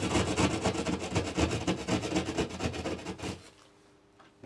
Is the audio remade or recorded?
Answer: recorded